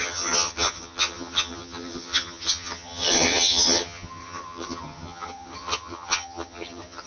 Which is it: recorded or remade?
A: remade